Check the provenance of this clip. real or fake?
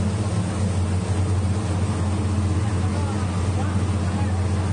real